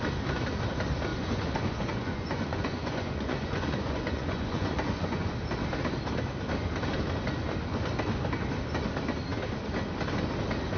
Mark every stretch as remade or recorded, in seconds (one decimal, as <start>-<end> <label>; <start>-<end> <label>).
0.0-1.1 recorded; 1.1-5.3 remade; 5.3-10.8 recorded